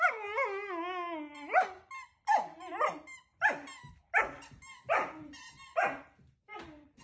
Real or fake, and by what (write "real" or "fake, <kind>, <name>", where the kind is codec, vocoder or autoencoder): real